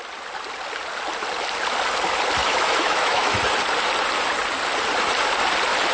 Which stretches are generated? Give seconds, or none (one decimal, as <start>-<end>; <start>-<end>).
2.4-3.4